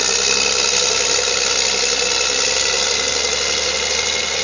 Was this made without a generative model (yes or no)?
yes